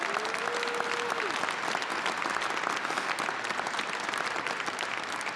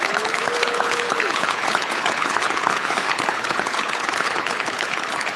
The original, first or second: first